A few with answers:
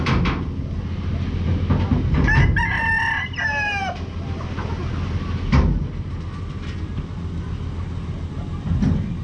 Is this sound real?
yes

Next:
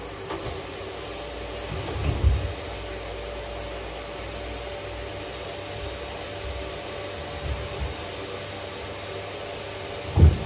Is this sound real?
yes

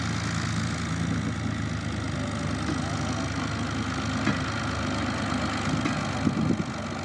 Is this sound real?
yes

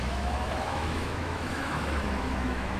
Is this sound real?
no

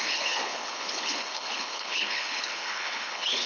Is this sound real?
no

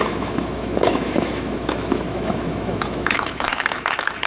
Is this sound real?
no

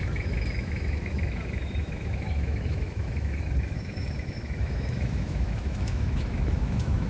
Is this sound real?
no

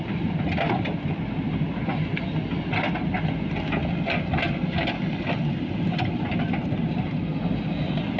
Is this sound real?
yes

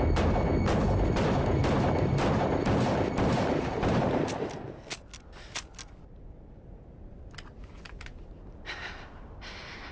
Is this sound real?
yes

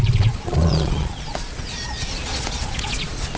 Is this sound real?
no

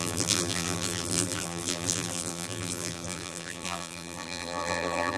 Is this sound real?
no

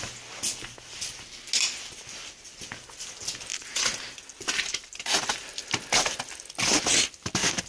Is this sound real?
yes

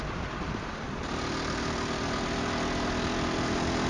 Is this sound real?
yes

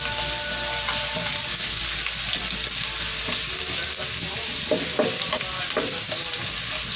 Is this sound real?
yes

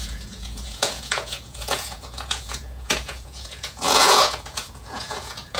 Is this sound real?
no